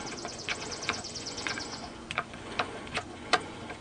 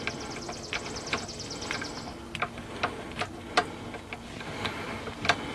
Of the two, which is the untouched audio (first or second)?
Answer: second